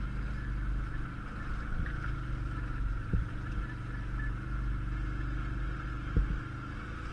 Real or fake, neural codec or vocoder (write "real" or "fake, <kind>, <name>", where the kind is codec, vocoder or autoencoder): real